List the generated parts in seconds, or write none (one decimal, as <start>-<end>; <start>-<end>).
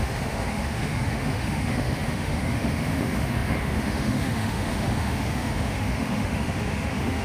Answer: 0.0-7.2